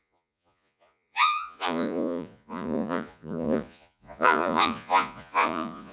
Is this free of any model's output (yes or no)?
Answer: no